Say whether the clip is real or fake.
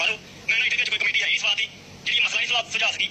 real